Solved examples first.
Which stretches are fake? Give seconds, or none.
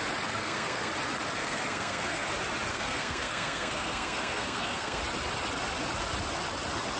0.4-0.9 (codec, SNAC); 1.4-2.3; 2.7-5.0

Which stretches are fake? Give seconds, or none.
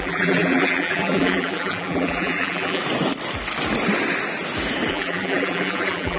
0.0-2.8 (vocoder, BigVGAN v2); 4.9-6.2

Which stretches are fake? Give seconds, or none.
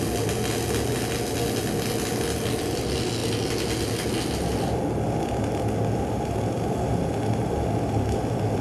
none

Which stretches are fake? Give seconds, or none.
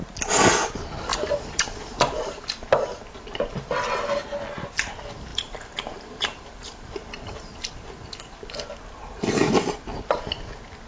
1.1-2.5 (vocoder, BigVGAN v2); 5.3-7.7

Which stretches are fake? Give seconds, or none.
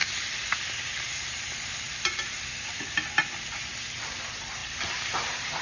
none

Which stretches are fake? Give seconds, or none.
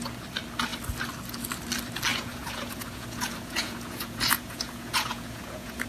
2.1-5.9 (vocoder, Vocos)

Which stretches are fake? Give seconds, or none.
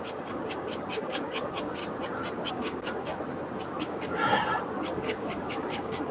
0.0-1.8 (codec, DAC); 2.5-3.1; 3.8-4.2; 4.8-6.1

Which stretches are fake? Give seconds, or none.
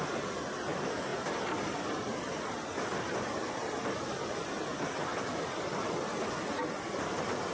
1.1-2.5 (vocoder, BigVGAN v2); 3.6-4.4; 5.1-5.9